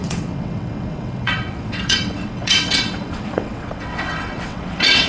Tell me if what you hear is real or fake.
fake